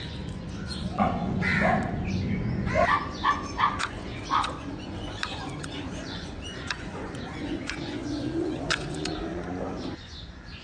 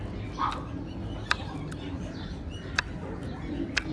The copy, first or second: first